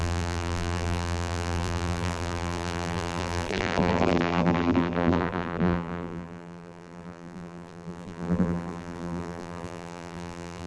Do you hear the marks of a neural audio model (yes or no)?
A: yes